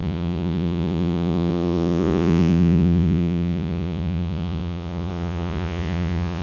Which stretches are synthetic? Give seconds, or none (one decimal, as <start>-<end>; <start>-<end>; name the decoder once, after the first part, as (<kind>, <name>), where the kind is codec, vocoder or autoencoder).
0.0-6.4 (vocoder, Vocos)

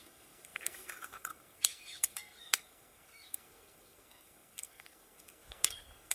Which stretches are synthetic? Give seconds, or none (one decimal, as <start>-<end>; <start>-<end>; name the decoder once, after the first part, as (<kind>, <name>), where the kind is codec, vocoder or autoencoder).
0.0-6.1 (codec, SNAC)